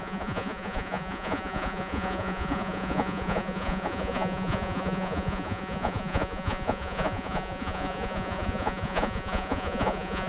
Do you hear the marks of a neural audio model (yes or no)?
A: yes